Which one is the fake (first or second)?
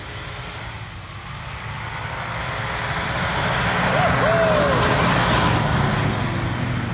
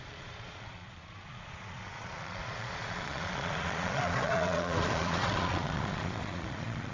second